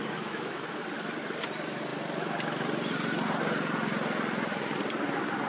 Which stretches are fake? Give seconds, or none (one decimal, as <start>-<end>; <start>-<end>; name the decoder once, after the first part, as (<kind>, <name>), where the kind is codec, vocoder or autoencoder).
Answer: 0.0-0.7 (autoencoder, DAC-VAE)